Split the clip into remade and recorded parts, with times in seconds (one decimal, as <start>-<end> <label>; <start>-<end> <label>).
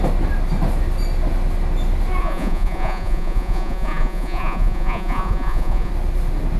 0.0-2.2 recorded; 2.2-5.9 remade; 5.9-6.6 recorded